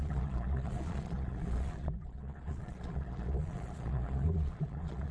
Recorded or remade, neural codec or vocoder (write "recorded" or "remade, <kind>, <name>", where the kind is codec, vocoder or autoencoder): remade, vocoder, Vocos